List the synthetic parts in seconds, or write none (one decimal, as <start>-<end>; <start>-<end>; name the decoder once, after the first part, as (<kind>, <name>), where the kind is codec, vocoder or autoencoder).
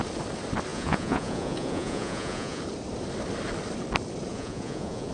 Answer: 0.7-2.6 (vocoder, Vocos); 4.3-5.1